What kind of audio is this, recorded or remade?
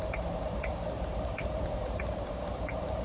remade